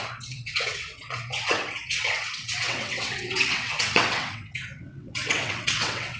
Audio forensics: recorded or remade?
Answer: remade